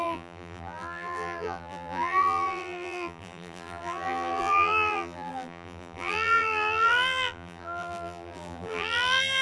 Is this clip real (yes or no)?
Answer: no